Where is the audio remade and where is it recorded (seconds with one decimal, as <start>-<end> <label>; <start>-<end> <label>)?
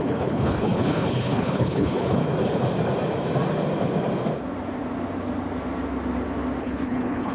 0.0-2.2 remade; 2.2-6.6 recorded; 6.6-7.3 remade